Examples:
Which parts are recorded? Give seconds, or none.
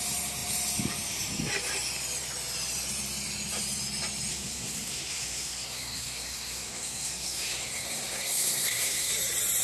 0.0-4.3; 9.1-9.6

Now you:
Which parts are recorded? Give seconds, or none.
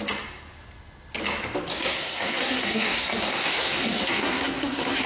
0.0-1.7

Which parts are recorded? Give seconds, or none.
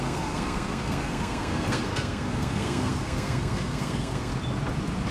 4.3-5.1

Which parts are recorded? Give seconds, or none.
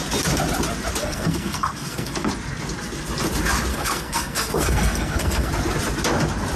0.0-1.0; 2.3-3.7; 5.5-6.6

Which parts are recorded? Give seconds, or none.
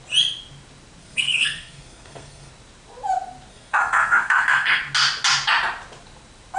0.0-1.0; 2.5-3.5; 4.8-6.6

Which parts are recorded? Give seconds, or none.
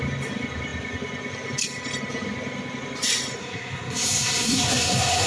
0.0-3.4